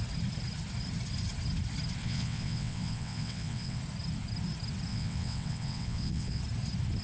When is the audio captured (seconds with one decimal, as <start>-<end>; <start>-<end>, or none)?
0.0-2.0; 3.8-4.9; 6.4-7.0